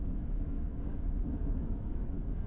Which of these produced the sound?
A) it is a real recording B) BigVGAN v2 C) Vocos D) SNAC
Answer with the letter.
D